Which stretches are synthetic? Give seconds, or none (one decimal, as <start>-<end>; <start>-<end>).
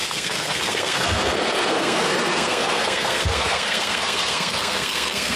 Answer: 0.0-5.4